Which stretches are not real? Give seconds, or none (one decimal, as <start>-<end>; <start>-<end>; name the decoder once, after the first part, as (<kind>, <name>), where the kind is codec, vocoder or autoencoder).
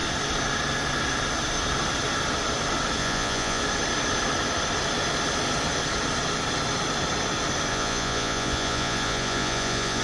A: 3.0-3.6 (vocoder, Vocos); 7.7-10.0